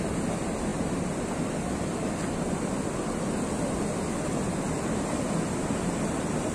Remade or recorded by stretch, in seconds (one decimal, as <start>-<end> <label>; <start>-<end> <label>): 0.0-6.5 recorded